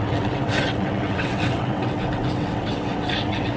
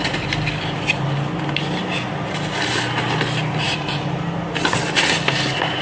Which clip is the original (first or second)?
second